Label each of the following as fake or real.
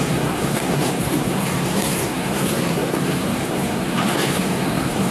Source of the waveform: fake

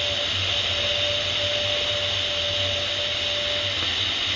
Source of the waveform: real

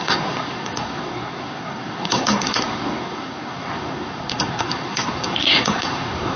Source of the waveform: fake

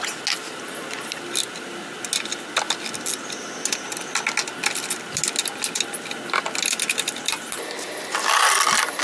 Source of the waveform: real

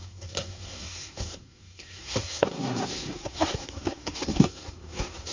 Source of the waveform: fake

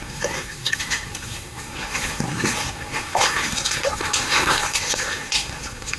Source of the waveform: fake